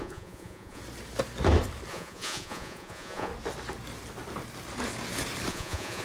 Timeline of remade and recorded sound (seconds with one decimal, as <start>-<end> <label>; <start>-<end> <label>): 0.0-0.8 remade; 0.8-1.9 recorded; 1.9-3.3 remade; 3.3-5.5 recorded; 5.5-6.0 remade